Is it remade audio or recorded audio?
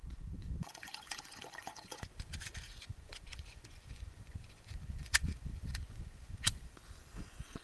remade